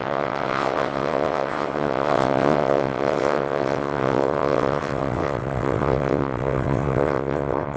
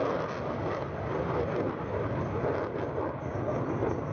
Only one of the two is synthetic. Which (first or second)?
first